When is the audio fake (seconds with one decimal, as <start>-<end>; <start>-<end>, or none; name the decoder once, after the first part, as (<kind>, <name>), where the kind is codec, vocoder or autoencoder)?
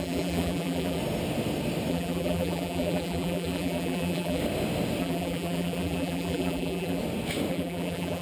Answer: 0.0-1.0 (vocoder, BigVGAN v2); 1.9-4.4; 5.0-7.0; 7.5-8.2